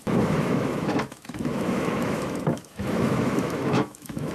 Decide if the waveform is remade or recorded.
remade